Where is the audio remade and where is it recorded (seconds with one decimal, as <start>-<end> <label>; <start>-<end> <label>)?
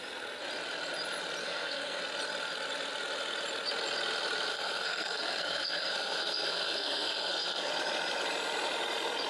0.0-1.4 recorded; 1.4-2.0 remade; 2.0-4.5 recorded; 4.5-7.7 remade; 7.7-9.3 recorded